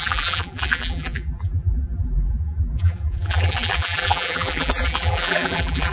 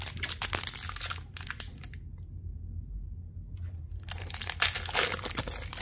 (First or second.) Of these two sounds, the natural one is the second